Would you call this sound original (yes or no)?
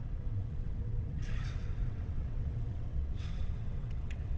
no